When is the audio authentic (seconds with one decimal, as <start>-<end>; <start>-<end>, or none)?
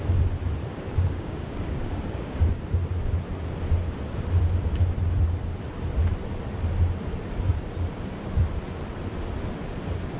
0.0-0.6; 2.4-10.2